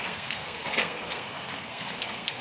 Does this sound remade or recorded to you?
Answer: remade